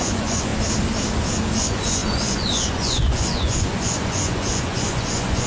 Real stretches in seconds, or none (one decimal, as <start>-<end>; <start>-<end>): 0.5-1.5